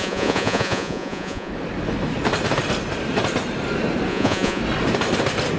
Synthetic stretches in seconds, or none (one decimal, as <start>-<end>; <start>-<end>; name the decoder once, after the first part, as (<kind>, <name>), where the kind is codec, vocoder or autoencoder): 0.0-1.5 (vocoder, Vocos); 4.1-4.6